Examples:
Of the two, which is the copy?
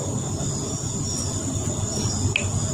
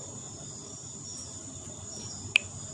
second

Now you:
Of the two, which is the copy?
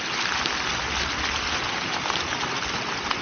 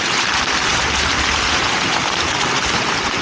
second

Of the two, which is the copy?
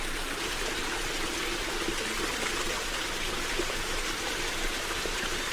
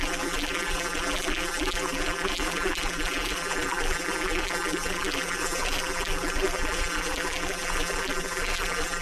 second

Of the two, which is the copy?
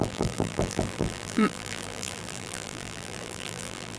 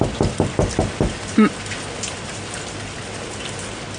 first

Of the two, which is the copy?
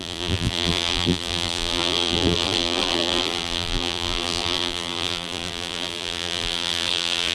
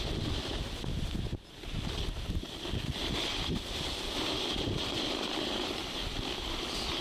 first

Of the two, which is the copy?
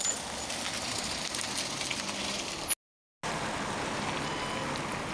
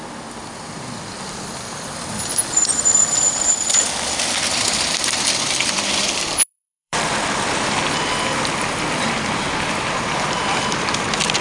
second